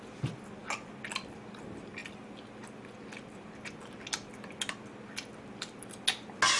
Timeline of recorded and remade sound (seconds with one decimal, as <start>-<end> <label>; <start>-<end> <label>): 0.0-6.6 recorded